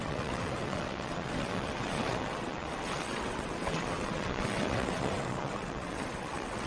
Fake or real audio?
fake